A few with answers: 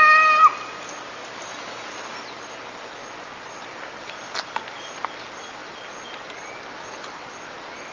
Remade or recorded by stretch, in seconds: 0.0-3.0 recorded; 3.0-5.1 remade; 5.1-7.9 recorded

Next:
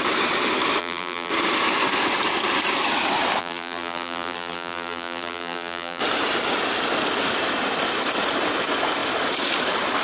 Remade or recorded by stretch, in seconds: 0.0-0.8 recorded; 0.8-1.3 remade; 1.3-3.4 recorded; 3.4-6.0 remade; 6.0-10.0 recorded

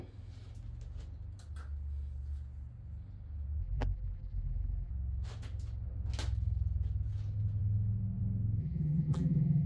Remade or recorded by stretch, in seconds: 0.0-3.6 recorded; 3.6-4.9 remade; 4.9-8.6 recorded; 8.6-9.7 remade

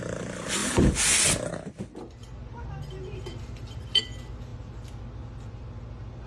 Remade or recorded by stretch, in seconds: 0.0-6.3 recorded

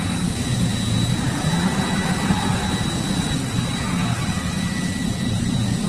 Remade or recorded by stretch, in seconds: 0.0-5.9 recorded